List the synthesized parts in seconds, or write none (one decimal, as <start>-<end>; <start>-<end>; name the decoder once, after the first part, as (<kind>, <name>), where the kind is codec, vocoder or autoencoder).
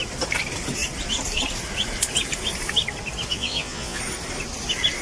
3.3-4.0 (vocoder, Vocos)